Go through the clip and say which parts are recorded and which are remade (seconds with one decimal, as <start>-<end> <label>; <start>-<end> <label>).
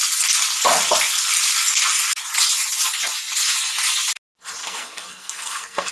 0.0-4.6 recorded; 4.6-5.9 remade